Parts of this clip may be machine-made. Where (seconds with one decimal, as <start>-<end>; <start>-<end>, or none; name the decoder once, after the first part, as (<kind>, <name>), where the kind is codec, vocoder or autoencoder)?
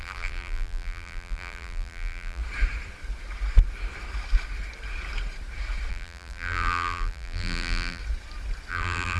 0.0-2.4 (vocoder, BigVGAN v2); 5.9-8.0; 8.7-9.2